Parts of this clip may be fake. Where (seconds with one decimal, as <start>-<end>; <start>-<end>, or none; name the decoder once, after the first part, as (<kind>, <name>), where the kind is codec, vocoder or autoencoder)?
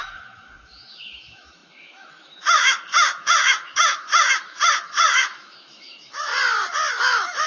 0.0-6.3 (autoencoder, DAC-VAE); 6.9-7.5